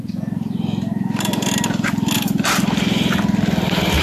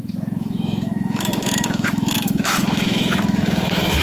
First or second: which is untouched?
first